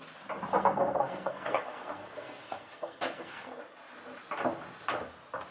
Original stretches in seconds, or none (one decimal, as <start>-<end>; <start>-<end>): 0.0-0.5; 3.6-5.5

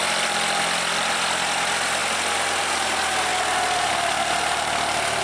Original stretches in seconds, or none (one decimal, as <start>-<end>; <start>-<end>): 0.0-5.2